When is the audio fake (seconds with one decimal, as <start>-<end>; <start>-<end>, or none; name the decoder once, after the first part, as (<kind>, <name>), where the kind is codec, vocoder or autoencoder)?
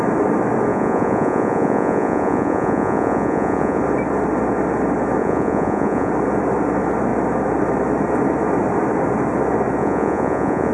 0.7-3.8 (vocoder, Vocos); 5.2-6.1; 9.8-10.7